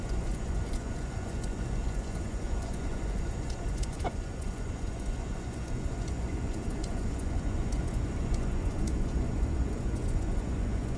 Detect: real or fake fake